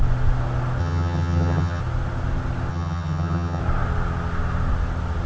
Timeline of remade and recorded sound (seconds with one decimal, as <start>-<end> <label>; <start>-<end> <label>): 0.0-0.8 recorded; 0.8-1.8 remade; 1.8-2.7 recorded; 2.7-3.6 remade; 3.6-5.3 recorded